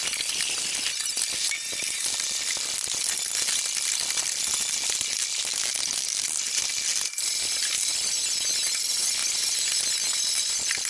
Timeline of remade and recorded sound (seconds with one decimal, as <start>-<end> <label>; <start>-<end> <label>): 0.0-10.9 recorded